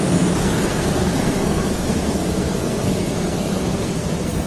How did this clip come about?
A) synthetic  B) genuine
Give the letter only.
A